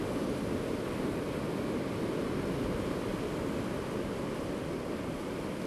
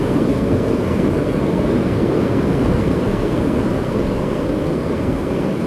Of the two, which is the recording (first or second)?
first